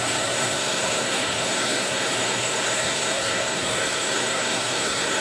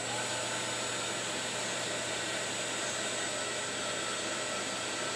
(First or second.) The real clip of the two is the second